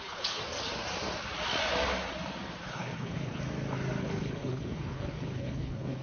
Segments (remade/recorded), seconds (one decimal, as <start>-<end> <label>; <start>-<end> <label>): 0.0-0.4 remade; 0.4-2.6 recorded; 2.6-3.4 remade; 3.4-4.0 recorded; 4.0-6.0 remade